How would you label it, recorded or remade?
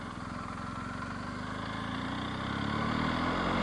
recorded